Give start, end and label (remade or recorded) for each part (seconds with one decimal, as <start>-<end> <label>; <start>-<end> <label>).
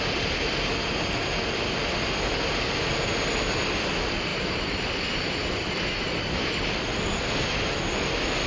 0.0-8.5 recorded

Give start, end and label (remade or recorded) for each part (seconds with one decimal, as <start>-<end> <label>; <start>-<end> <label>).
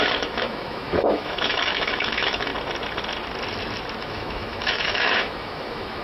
0.0-2.5 remade; 2.5-4.0 recorded; 4.0-6.0 remade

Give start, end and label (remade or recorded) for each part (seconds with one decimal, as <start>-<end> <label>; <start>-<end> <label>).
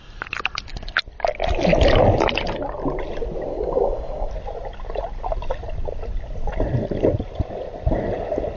0.0-3.5 recorded; 3.5-4.3 remade; 4.3-8.6 recorded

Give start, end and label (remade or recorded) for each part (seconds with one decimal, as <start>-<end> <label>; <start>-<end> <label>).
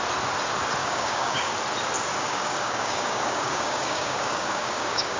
0.0-0.8 recorded; 0.8-1.5 remade; 1.5-2.1 recorded; 2.1-5.2 remade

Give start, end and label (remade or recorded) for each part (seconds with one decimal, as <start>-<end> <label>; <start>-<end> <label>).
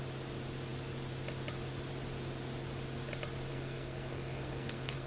0.0-3.5 recorded; 3.5-5.1 remade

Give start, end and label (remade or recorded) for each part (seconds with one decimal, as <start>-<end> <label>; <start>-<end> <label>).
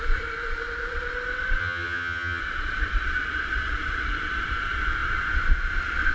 0.0-1.6 recorded; 1.6-2.4 remade; 2.4-6.1 recorded